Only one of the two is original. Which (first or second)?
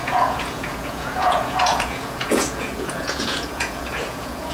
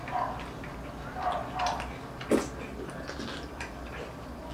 second